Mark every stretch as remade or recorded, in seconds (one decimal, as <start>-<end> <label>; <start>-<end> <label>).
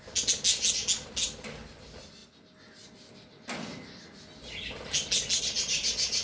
0.0-6.2 recorded